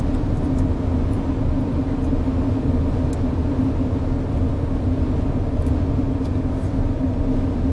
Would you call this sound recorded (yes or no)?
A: yes